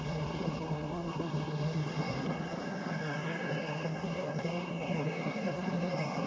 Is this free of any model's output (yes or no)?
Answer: no